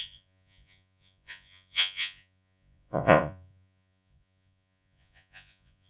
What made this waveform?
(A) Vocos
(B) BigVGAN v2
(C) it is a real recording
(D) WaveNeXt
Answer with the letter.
A